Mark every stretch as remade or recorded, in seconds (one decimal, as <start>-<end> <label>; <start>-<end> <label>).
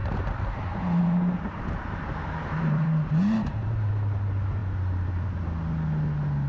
0.0-3.9 remade; 3.9-4.6 recorded; 4.6-5.4 remade; 5.4-6.5 recorded